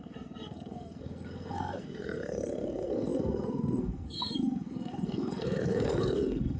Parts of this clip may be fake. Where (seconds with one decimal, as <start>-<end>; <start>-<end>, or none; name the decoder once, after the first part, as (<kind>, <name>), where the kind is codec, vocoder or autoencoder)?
0.0-6.6 (codec, SNAC)